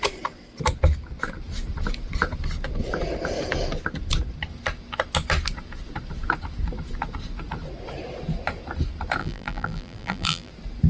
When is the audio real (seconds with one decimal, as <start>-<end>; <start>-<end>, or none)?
0.0-9.2; 10.5-10.9